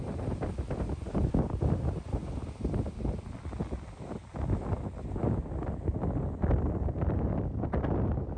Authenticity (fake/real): real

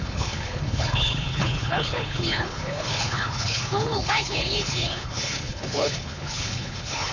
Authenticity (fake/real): fake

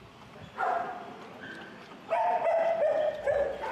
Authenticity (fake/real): real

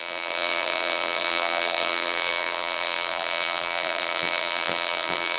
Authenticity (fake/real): fake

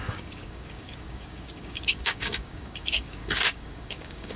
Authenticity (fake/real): fake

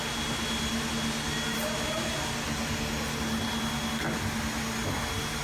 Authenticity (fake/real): real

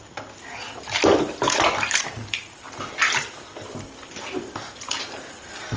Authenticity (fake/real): real